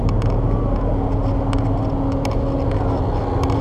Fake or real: real